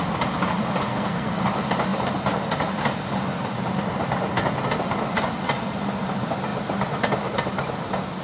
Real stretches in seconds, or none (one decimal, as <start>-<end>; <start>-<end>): 0.0-0.9; 1.4-8.2

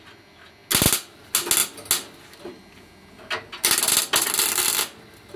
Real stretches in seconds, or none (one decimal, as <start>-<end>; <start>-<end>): 0.0-5.4

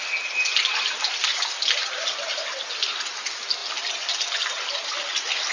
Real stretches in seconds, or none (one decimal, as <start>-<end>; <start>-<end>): 0.0-5.5

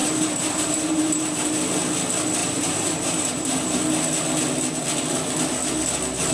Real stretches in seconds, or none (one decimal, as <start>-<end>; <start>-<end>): 1.5-2.4; 3.8-6.3

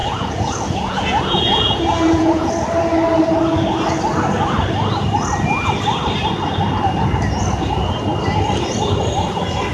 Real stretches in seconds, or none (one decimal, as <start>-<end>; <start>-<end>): 2.5-9.7